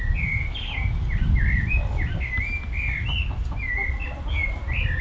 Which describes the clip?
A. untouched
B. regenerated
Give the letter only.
A